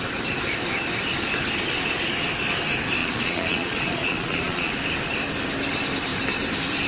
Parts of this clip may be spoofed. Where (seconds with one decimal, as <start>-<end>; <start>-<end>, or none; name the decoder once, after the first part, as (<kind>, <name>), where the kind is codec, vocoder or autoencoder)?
3.0-4.7 (vocoder, Vocos)